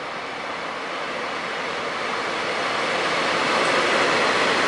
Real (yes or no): yes